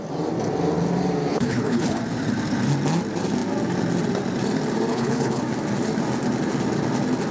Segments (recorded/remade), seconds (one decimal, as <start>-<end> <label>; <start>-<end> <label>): 0.0-1.3 recorded; 1.3-2.0 remade; 2.0-4.9 recorded; 4.9-5.4 remade; 5.4-7.3 recorded